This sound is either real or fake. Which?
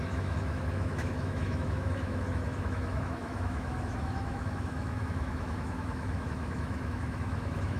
fake